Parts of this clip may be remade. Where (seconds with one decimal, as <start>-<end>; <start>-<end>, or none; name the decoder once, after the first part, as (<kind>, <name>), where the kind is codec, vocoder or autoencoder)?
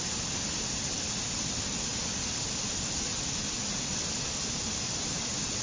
none